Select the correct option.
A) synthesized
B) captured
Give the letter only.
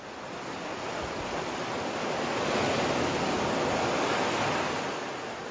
B